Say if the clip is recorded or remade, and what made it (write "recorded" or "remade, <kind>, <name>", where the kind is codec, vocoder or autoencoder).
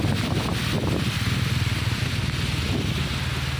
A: recorded